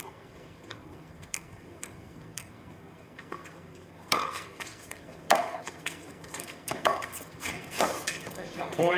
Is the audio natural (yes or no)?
no